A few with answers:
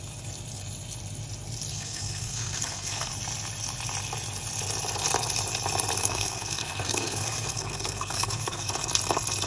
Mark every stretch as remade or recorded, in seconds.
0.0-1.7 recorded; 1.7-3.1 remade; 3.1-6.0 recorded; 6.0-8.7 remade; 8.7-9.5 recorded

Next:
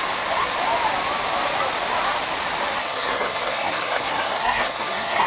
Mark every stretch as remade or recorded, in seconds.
0.0-2.8 recorded; 2.8-5.3 remade

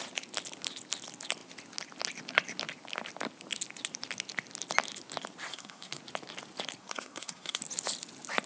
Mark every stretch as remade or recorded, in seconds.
0.0-5.5 recorded; 5.5-6.0 remade; 6.0-6.8 recorded; 6.8-7.6 remade; 7.6-8.5 recorded

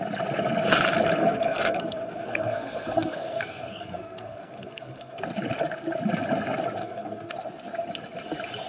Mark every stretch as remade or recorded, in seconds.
0.0-1.2 recorded; 1.2-5.2 remade; 5.2-6.8 recorded; 6.8-7.3 remade; 7.3-8.7 recorded

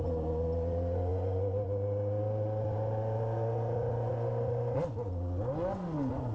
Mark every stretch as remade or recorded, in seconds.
0.0-6.3 recorded

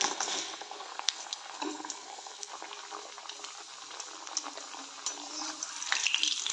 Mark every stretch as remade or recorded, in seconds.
0.0-2.5 remade; 2.5-6.5 recorded

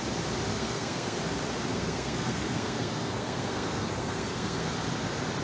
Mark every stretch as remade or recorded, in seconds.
0.0-0.5 recorded; 0.5-1.2 remade; 1.2-1.7 recorded; 1.7-4.7 remade; 4.7-5.4 recorded